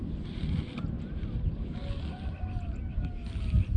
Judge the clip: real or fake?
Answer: real